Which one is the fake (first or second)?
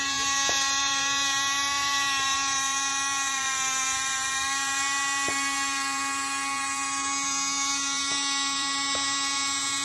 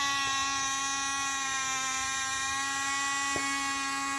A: first